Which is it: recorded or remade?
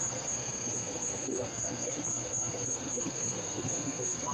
remade